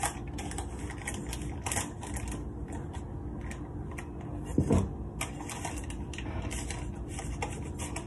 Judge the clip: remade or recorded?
recorded